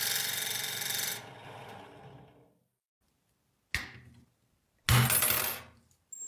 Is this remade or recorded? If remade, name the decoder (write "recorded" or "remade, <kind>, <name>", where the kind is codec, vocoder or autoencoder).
recorded